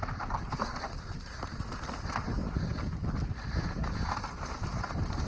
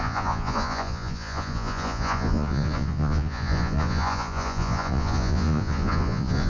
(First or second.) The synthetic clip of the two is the second